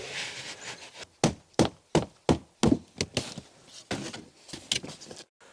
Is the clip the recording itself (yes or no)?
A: yes